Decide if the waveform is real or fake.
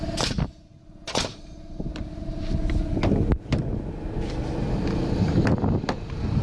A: real